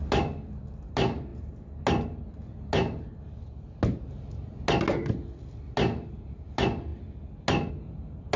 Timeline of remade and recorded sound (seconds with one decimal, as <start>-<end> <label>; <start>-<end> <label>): 0.0-8.4 recorded